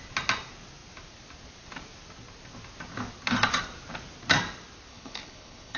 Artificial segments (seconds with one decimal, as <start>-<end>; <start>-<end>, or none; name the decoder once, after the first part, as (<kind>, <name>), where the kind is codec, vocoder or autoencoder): 4.9-5.8 (codec, HILCodec)

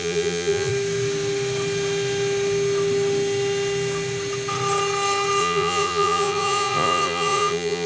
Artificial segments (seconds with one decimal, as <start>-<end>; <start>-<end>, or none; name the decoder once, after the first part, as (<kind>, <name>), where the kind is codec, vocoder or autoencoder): 0.0-0.7 (vocoder, Vocos); 5.4-7.9

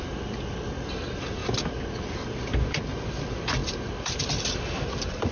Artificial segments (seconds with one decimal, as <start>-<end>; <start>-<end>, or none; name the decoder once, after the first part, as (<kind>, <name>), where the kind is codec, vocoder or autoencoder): 0.0-1.4 (vocoder, BigVGAN v2); 3.1-5.3

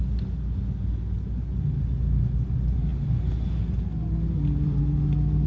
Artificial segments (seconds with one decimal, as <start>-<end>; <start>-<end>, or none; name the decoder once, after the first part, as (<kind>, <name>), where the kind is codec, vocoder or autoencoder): none

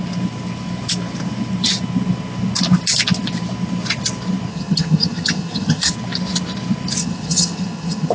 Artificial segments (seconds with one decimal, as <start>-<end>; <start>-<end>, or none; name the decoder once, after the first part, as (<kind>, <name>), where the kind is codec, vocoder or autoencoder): 4.5-5.9 (vocoder, HiFi-GAN); 7.0-8.1

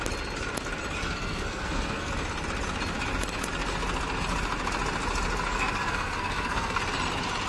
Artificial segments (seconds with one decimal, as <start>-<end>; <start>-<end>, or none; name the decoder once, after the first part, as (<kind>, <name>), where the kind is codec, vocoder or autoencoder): 1.0-2.1 (codec, SNAC); 5.5-6.8

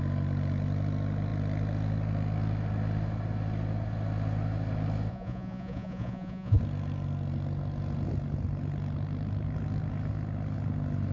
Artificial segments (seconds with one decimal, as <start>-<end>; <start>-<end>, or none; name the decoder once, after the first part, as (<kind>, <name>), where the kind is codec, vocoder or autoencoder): 5.1-6.6 (vocoder, Vocos)

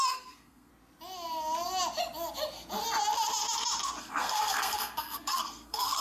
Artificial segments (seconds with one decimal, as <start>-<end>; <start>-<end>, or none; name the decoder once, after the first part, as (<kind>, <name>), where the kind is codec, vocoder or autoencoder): 0.0-0.7 (codec, SNAC); 4.0-6.0